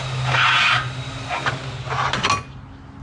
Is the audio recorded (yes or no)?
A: yes